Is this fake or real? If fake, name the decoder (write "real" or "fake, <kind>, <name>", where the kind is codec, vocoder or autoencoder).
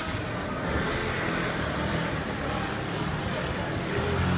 real